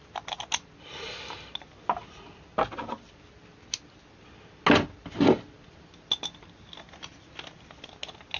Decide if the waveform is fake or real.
real